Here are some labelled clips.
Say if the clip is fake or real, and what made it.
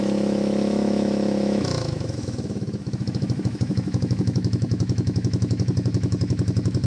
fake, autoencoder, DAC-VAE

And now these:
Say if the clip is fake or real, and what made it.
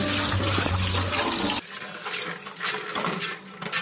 real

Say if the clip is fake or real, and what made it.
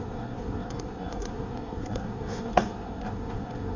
fake, codec, SNAC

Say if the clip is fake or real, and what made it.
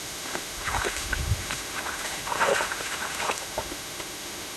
fake, autoencoder, DAC-VAE